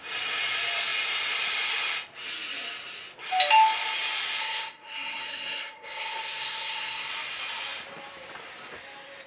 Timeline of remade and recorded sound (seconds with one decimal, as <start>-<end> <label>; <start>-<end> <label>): 0.0-4.4 recorded; 4.4-7.1 remade; 7.1-9.3 recorded